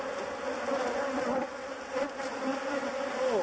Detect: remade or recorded recorded